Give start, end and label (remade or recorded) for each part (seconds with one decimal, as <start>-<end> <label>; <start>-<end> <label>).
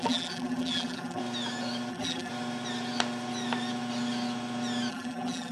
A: 0.0-1.2 remade; 1.2-1.9 recorded; 1.9-2.3 remade; 2.3-4.9 recorded; 4.9-5.5 remade